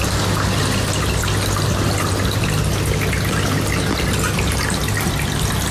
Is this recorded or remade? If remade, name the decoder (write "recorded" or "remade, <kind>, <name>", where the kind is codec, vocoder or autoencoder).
recorded